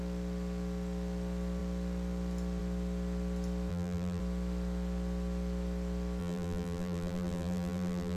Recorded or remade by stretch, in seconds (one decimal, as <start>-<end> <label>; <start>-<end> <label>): 0.0-3.7 recorded; 3.7-4.2 remade; 4.2-6.2 recorded; 6.2-8.2 remade